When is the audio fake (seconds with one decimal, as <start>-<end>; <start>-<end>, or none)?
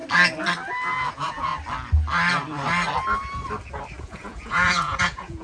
1.1-1.5; 4.0-5.4